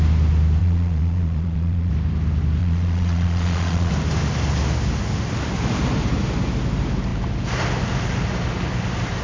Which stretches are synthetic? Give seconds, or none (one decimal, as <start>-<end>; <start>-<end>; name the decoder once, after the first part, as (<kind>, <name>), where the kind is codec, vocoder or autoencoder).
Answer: 0.6-1.9 (vocoder, Vocos); 2.6-3.9